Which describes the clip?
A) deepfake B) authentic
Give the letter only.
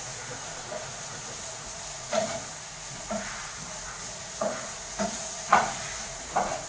A